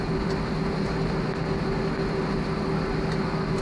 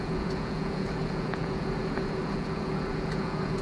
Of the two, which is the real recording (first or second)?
first